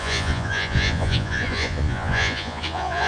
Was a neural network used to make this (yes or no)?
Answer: yes